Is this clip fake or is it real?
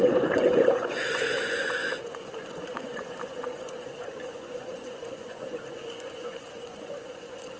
fake